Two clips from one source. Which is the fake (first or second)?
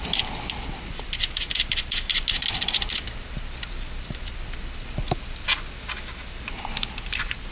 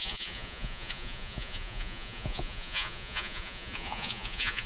second